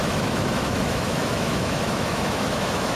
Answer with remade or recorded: remade